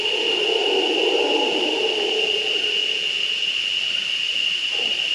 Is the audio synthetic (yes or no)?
no